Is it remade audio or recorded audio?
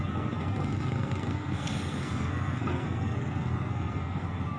remade